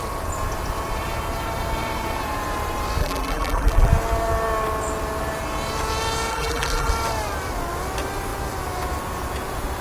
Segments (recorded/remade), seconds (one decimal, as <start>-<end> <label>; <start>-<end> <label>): 0.0-3.0 recorded; 3.0-3.9 remade; 3.9-6.3 recorded; 6.3-6.9 remade; 6.9-9.8 recorded